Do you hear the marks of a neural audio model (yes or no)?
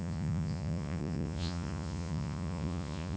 yes